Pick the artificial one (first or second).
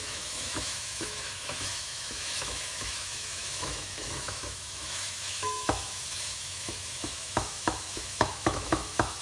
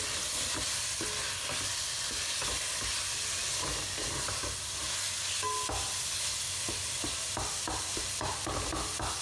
first